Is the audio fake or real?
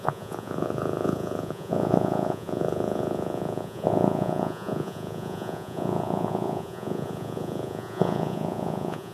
fake